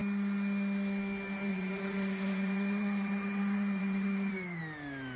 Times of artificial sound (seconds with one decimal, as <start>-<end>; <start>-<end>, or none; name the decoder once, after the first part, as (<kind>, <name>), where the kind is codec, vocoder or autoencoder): 1.5-4.6 (vocoder, Vocos)